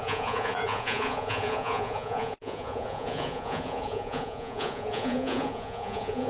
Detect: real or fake fake